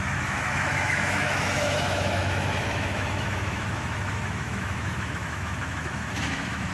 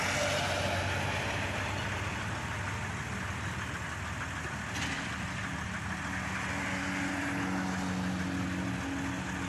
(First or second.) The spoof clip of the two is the first